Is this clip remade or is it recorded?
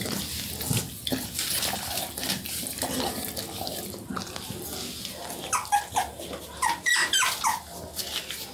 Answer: recorded